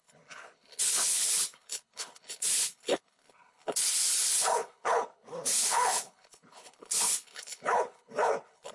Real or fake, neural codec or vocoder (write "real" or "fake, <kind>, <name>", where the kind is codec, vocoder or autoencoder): fake, codec, HILCodec